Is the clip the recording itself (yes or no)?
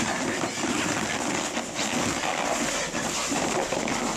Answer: yes